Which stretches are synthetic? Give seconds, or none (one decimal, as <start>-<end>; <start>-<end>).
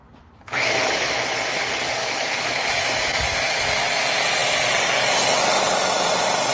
0.0-1.1; 2.0-3.6